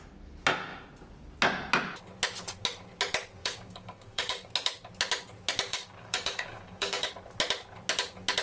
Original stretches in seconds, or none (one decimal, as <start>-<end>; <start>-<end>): 0.0-3.4; 4.5-5.7; 7.1-8.4